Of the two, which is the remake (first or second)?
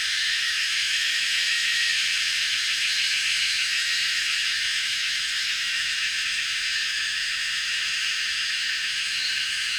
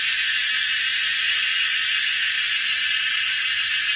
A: first